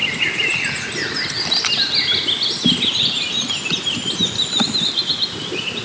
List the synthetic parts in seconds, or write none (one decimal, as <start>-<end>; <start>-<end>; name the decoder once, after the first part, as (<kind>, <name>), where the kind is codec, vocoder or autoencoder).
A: 3.5-5.8 (vocoder, BigVGAN v2)

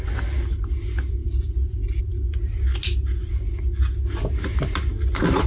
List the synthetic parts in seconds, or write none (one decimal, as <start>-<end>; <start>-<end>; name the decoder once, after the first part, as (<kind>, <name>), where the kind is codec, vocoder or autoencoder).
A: 1.2-2.0 (vocoder, BigVGAN v2)

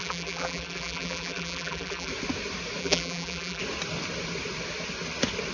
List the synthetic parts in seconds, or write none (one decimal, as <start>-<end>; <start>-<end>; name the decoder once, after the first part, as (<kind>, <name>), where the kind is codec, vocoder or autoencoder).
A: 0.0-2.1 (vocoder, BigVGAN v2); 2.8-3.6

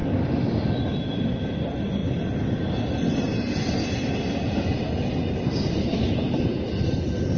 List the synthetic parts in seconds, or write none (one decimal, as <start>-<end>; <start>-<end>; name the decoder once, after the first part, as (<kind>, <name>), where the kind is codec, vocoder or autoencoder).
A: 0.0-1.3 (vocoder, BigVGAN v2); 2.0-2.6